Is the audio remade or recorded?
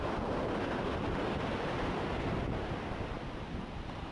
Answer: recorded